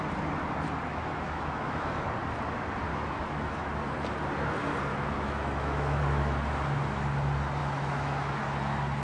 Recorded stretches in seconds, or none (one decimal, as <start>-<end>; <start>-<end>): 0.0-0.9; 2.0-2.9; 3.7-4.9; 6.0-7.6; 8.4-9.0